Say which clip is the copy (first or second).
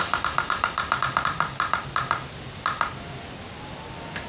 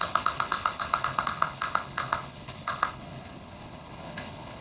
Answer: second